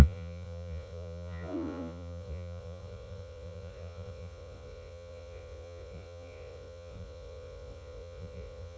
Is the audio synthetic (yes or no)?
yes